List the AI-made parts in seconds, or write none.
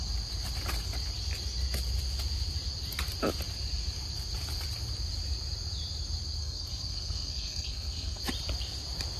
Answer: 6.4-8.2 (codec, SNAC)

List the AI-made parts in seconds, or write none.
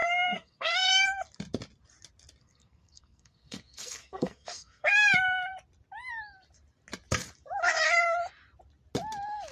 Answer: 0.0-0.9 (codec, SNAC); 2.4-4.9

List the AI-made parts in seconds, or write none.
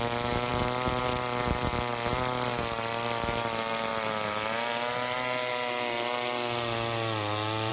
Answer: none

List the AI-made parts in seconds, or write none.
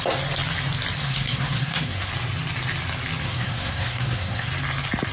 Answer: 1.0-2.1 (codec, SNAC); 3.2-4.5